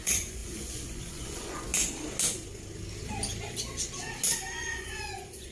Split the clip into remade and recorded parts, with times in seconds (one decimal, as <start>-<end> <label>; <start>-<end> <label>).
0.0-1.7 remade; 1.7-4.6 recorded; 4.6-5.5 remade